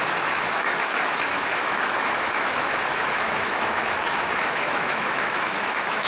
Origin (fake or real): fake